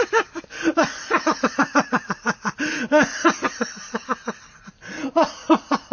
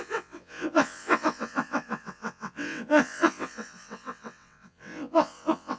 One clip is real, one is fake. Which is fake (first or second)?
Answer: second